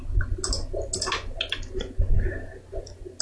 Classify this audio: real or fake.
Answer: real